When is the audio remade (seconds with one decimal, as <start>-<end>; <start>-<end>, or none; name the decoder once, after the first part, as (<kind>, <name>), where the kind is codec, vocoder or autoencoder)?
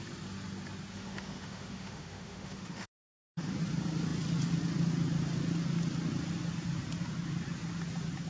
0.9-3.5 (autoencoder, DAC-VAE)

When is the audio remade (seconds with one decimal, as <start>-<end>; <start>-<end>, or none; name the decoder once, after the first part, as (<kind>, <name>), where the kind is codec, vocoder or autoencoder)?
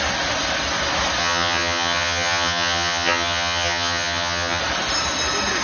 1.2-4.6 (vocoder, HiFi-GAN)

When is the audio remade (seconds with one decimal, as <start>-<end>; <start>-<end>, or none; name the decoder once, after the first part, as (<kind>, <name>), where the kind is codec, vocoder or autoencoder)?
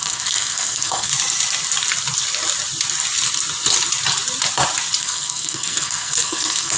0.0-1.1 (codec, SNAC); 5.0-6.8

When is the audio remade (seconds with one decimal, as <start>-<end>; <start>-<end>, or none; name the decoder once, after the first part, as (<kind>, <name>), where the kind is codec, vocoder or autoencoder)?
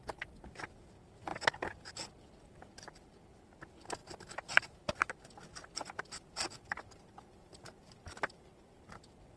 4.0-5.0 (vocoder, BigVGAN v2)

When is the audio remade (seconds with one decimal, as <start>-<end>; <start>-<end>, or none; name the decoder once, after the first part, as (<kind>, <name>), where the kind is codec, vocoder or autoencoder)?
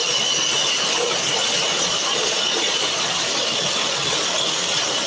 1.7-3.2 (vocoder, Vocos)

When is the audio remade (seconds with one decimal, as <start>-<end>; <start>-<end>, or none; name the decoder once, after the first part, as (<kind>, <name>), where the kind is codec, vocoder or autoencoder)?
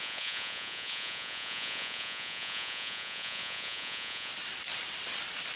0.0-4.3 (vocoder, Vocos)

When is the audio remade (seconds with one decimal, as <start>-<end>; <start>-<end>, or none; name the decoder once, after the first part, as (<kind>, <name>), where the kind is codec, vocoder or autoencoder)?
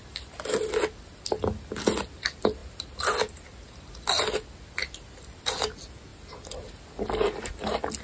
none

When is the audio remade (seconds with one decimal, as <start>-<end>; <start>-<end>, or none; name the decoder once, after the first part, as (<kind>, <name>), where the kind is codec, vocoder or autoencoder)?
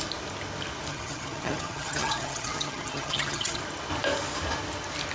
0.9-3.6 (vocoder, HiFi-GAN)